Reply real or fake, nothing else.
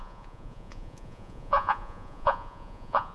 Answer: fake